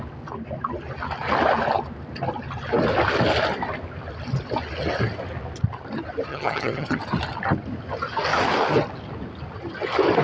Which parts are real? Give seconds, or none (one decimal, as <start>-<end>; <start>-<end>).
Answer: 0.0-6.3; 7.0-10.2